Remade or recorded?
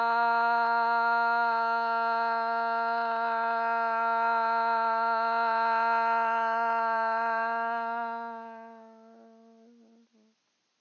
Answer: recorded